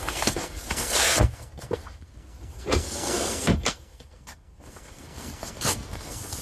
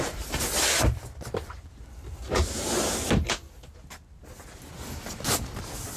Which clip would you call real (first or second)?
second